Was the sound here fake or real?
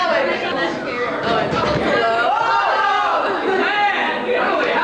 real